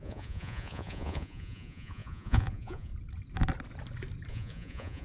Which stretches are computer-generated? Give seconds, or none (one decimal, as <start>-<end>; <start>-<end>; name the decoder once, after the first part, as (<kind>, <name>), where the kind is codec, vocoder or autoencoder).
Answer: 0.0-2.9 (vocoder, Vocos); 4.3-5.0